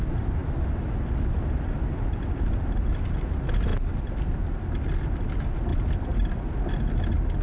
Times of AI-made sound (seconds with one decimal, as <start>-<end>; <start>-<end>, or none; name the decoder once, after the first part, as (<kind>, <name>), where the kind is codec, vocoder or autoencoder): 0.4-2.9 (vocoder, BigVGAN v2); 5.7-6.8